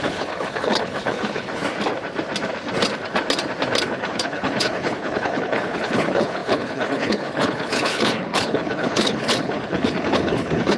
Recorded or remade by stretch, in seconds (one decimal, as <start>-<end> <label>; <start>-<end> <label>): 0.0-1.6 remade; 1.6-3.8 recorded; 3.8-10.8 remade